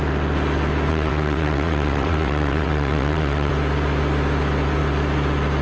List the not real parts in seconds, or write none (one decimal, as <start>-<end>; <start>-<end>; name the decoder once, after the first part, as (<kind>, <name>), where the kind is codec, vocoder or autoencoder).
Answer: 0.9-3.5 (vocoder, WaveNeXt)